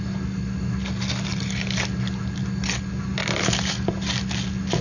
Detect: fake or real real